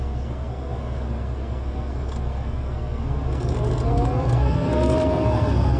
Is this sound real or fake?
fake